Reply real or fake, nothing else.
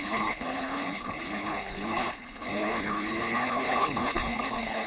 fake